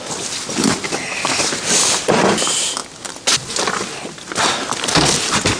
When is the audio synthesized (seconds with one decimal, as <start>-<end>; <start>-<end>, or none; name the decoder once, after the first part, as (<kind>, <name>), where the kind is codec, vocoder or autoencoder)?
none